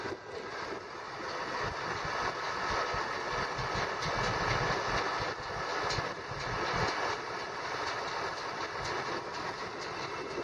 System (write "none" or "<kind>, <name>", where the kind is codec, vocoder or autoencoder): none